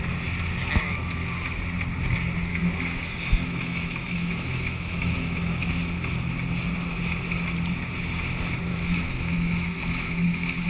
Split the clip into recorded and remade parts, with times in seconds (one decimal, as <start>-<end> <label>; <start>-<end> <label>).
0.0-2.5 recorded; 2.5-5.7 remade; 5.7-8.7 recorded; 8.7-10.7 remade